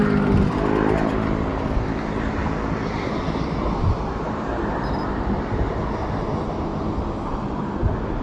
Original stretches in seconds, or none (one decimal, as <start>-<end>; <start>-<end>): 0.0-8.2